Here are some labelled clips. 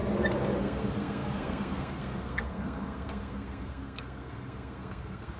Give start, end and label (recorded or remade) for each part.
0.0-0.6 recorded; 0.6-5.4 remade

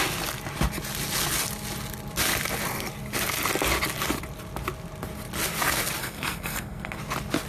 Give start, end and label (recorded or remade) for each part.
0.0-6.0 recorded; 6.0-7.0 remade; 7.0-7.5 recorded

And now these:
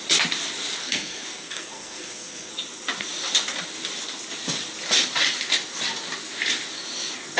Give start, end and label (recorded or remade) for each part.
0.0-0.8 recorded; 0.8-2.5 remade; 2.5-7.4 recorded

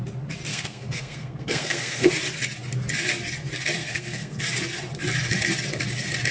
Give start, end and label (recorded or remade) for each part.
0.0-0.5 recorded; 0.5-2.1 remade; 2.1-3.8 recorded; 3.8-4.4 remade; 4.4-6.3 recorded

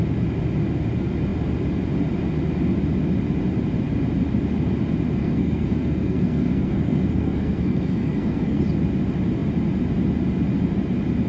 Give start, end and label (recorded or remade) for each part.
0.0-5.2 recorded; 5.2-8.6 remade; 8.6-11.3 recorded

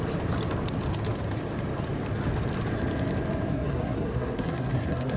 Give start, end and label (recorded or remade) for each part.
0.0-3.5 recorded; 3.5-5.2 remade